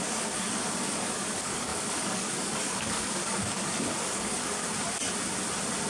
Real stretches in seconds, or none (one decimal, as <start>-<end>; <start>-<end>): 4.6-5.9